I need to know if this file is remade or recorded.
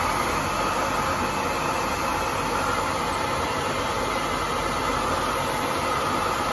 recorded